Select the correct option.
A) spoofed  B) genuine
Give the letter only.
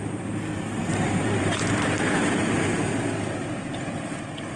A